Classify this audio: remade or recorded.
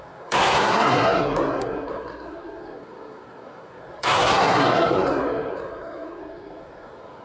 remade